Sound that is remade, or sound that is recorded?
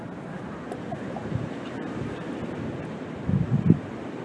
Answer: recorded